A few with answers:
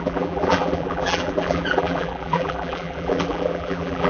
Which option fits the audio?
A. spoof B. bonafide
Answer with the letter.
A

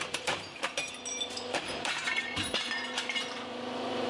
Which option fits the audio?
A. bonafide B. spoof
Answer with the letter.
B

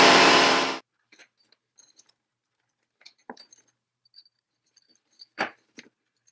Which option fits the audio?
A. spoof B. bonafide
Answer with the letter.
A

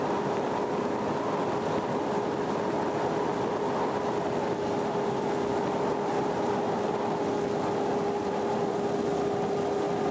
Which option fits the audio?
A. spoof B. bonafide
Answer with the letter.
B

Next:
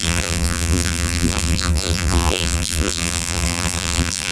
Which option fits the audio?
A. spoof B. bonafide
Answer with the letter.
A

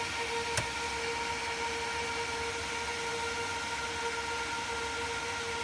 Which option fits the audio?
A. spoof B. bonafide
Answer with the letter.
B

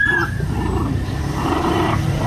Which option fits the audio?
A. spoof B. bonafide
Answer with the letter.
A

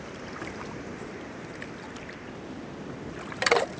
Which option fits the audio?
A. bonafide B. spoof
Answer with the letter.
B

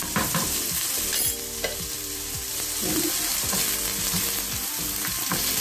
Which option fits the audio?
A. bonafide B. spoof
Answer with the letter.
B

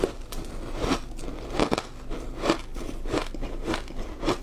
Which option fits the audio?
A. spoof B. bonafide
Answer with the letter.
B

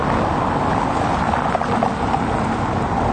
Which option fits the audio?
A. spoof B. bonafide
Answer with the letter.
B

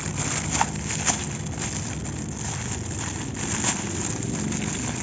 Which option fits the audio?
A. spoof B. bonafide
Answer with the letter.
B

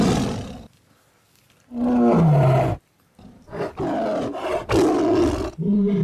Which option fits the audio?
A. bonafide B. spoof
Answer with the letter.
A